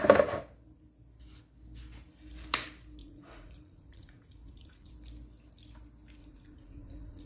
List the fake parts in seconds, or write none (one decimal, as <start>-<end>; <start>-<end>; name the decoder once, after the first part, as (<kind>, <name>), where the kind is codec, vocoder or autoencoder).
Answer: 3.0-4.9 (vocoder, Vocos); 6.2-7.3